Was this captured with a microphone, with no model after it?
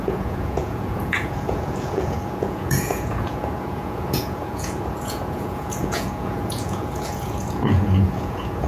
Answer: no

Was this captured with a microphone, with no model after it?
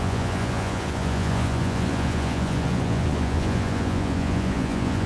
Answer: no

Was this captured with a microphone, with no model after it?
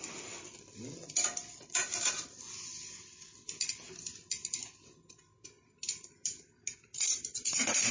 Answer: yes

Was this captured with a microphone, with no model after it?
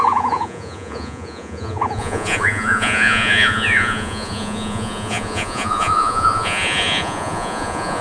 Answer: no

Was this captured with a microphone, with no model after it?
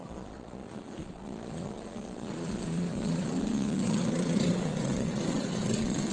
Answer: no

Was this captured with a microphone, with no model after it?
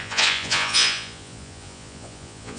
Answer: no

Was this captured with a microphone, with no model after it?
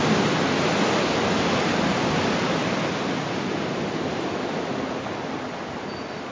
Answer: yes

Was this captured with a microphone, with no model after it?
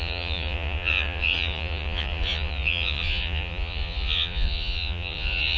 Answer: no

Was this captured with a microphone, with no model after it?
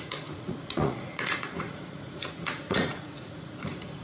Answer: no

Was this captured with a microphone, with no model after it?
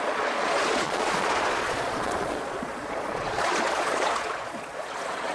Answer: no